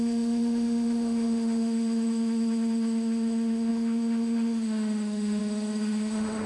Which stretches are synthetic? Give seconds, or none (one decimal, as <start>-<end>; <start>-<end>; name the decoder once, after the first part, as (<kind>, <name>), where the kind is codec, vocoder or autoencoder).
0.0-6.5 (autoencoder, DAC-VAE)